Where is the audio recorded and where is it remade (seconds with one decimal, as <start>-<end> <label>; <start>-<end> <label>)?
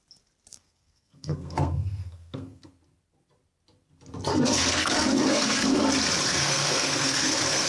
0.0-0.5 recorded; 0.5-2.7 remade; 2.7-4.3 recorded; 4.3-5.8 remade; 5.8-6.3 recorded; 6.3-7.7 remade